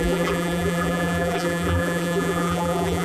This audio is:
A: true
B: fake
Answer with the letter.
B